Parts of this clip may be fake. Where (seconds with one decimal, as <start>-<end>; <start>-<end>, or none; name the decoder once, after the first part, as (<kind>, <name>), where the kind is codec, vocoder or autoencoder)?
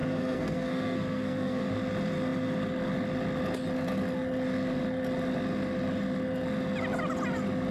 0.0-1.7 (codec, SNAC)